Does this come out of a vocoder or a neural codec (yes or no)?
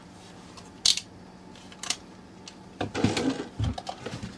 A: no